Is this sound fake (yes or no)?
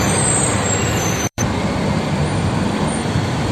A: yes